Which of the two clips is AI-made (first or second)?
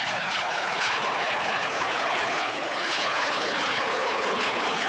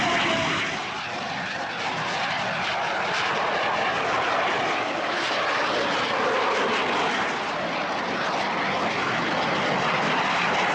first